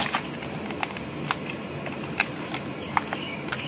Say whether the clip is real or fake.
real